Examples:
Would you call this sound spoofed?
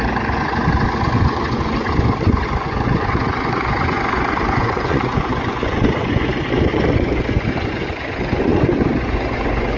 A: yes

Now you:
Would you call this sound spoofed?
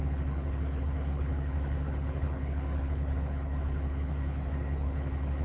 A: yes